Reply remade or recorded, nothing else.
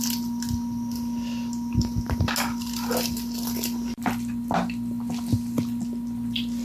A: recorded